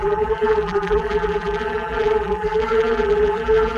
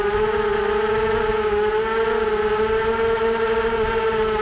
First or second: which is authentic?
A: second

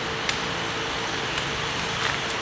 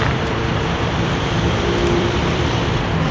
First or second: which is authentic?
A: first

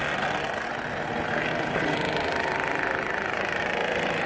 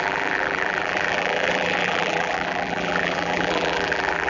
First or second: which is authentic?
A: first